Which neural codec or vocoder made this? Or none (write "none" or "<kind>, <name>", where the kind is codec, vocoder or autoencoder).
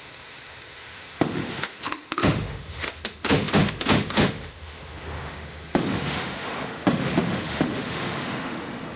autoencoder, DAC-VAE